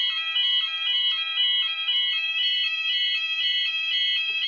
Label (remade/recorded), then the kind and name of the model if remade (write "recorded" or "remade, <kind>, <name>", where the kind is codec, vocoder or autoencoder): remade, vocoder, BigVGAN v2